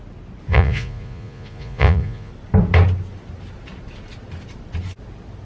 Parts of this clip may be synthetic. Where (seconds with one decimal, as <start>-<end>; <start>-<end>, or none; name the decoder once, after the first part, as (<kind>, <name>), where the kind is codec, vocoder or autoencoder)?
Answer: 0.5-2.3 (vocoder, Vocos)